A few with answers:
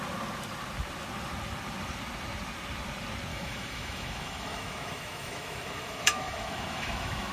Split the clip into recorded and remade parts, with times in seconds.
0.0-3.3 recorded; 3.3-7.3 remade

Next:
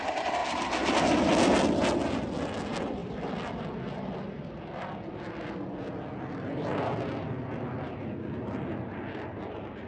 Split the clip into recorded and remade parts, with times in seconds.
0.0-9.9 recorded